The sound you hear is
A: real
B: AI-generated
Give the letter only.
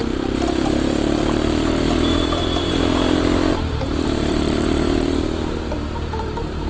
B